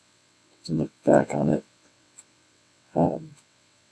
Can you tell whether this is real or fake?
fake